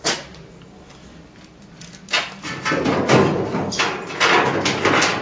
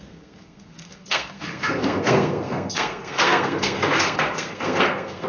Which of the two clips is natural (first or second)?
first